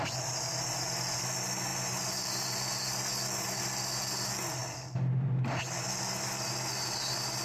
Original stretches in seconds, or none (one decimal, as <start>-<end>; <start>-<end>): 0.0-4.6; 5.5-7.4